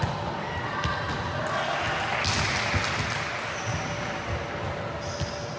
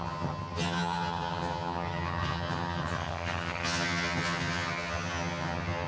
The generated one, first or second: second